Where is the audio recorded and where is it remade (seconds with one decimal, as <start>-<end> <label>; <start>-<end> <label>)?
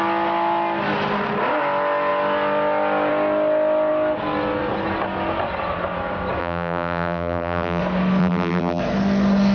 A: 0.0-6.4 recorded; 6.4-7.8 remade; 7.8-8.2 recorded; 8.2-8.8 remade; 8.8-9.5 recorded